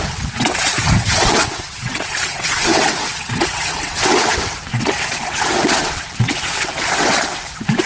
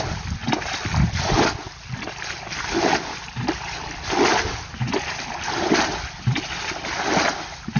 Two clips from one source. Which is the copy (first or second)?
first